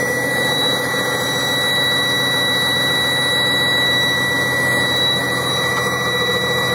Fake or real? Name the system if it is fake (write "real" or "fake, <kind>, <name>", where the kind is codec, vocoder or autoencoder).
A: real